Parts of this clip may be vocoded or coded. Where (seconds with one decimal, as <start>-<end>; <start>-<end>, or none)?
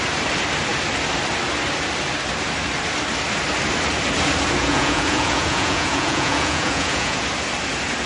4.6-7.2